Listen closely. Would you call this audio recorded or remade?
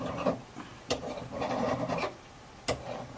recorded